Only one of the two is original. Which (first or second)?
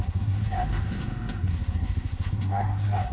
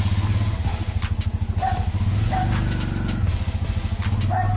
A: second